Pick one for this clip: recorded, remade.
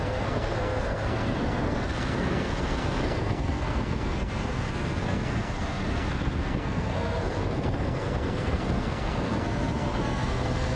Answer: remade